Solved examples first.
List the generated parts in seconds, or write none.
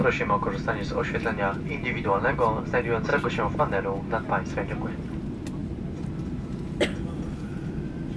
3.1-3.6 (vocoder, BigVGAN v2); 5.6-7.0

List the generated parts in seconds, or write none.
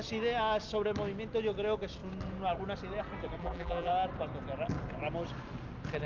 3.4-3.9 (vocoder, BigVGAN v2)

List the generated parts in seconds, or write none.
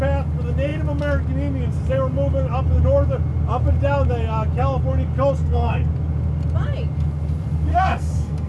5.4-5.9 (codec, SNAC); 7.7-8.5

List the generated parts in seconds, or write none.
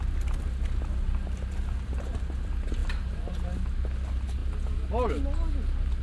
none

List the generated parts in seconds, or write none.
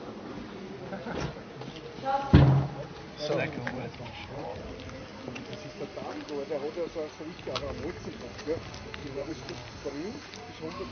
3.7-4.6 (vocoder, Vocos); 9.0-9.5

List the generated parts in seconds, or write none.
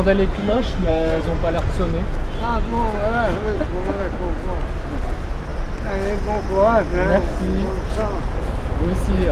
0.4-1.2 (codec, SNAC)